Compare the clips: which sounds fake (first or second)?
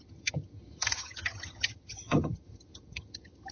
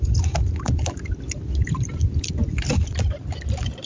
first